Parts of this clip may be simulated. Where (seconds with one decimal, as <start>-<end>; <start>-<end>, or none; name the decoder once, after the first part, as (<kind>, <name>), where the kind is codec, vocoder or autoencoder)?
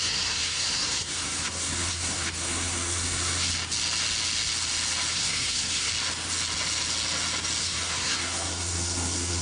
0.0-3.5 (codec, SNAC); 5.1-5.9; 7.6-9.4